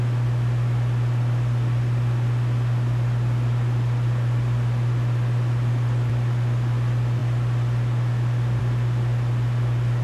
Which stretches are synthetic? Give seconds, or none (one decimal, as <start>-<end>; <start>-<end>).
none